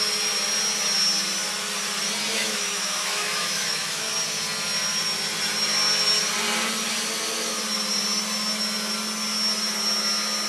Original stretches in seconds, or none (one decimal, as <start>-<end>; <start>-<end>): 0.0-2.3; 4.1-10.5